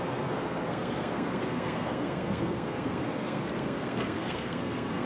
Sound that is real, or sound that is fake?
fake